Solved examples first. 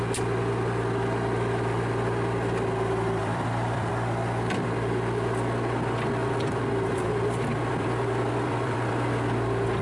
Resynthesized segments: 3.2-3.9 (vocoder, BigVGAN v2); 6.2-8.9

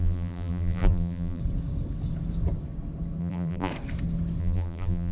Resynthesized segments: 0.0-1.4 (vocoder, BigVGAN v2); 3.2-3.7; 4.4-5.1

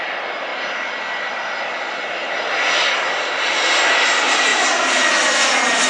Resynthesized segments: 4.5-5.1 (vocoder, BigVGAN v2)